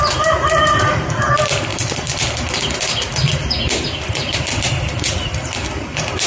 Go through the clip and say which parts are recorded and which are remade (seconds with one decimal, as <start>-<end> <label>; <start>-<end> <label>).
0.0-6.3 recorded